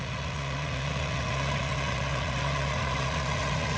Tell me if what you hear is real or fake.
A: fake